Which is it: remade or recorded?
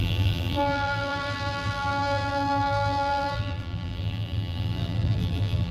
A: remade